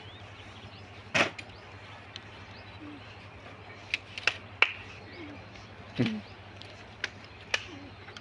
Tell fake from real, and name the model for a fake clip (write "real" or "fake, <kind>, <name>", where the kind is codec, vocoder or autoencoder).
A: real